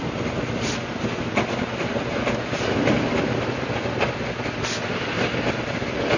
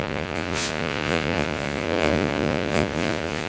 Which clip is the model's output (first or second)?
second